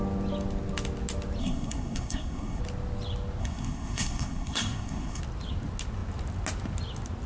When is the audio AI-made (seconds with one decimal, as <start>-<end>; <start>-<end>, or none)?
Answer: 1.4-2.6; 3.4-5.2